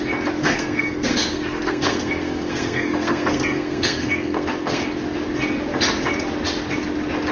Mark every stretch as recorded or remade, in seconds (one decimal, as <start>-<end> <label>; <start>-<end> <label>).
0.0-0.4 recorded; 0.4-4.8 remade; 4.8-7.3 recorded